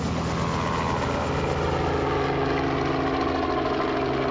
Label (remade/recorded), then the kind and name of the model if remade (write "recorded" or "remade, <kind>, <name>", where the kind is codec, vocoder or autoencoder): recorded